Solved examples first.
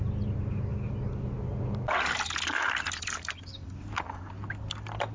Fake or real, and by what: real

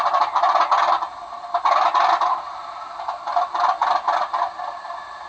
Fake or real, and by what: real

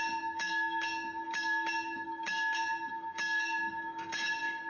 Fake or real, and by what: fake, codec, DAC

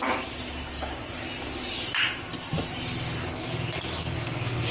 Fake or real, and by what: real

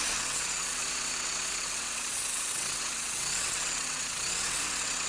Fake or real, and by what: fake, vocoder, WaveNeXt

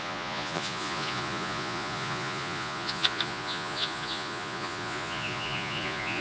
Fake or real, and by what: fake, vocoder, Vocos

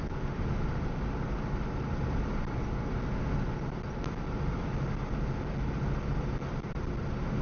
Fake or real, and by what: real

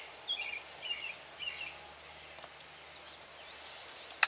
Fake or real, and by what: real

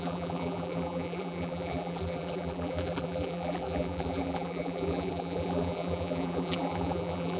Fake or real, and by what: fake, vocoder, BigVGAN v2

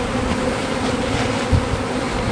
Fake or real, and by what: real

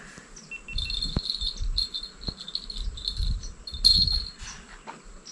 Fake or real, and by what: real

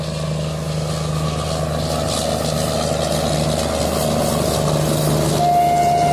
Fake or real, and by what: real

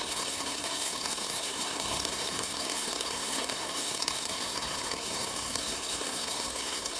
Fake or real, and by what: fake, codec, SNAC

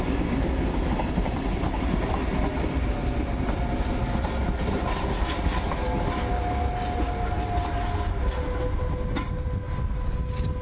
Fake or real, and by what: real